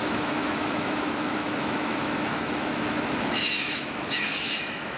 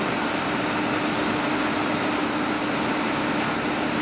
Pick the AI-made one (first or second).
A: first